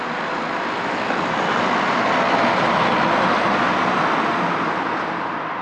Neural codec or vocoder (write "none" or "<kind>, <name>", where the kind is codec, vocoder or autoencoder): none